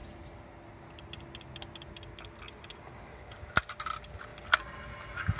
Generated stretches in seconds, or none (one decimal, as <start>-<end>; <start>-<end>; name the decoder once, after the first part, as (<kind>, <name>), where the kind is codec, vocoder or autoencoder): none